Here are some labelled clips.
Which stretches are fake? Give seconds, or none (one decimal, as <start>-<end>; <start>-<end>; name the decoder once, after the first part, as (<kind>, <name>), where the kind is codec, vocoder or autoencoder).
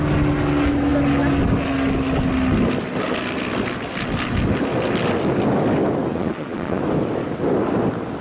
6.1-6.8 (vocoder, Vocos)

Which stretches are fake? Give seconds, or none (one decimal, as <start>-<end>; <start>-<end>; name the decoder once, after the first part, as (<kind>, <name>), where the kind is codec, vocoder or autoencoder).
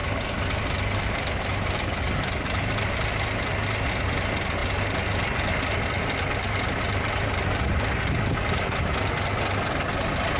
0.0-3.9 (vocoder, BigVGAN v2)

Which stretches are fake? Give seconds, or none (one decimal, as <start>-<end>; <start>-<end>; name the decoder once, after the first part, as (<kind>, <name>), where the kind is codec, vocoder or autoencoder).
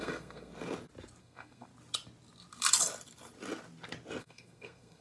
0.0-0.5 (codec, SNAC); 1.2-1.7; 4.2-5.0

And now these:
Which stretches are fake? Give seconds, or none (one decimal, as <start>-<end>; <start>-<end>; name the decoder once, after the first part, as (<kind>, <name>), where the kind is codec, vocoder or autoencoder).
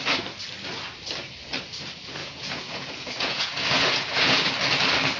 2.2-4.5 (vocoder, Vocos)